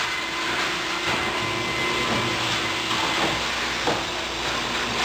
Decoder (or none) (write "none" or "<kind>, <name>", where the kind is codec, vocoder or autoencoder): none